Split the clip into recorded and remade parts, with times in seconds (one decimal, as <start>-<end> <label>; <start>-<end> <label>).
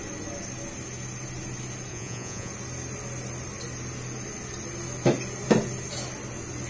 0.0-1.9 recorded; 1.9-2.5 remade; 2.5-6.7 recorded